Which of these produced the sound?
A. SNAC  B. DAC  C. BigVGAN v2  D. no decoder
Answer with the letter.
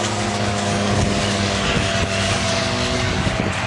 B